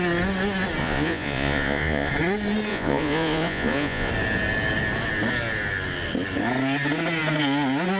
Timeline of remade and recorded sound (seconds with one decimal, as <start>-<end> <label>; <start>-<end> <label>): 0.0-0.8 recorded; 0.8-2.1 remade; 2.1-2.7 recorded; 2.7-4.1 remade; 4.1-8.0 recorded